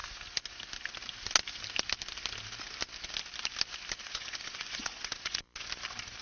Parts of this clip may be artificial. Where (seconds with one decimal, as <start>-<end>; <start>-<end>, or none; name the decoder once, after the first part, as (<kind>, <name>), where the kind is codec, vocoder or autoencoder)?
4.0-5.4 (vocoder, Vocos)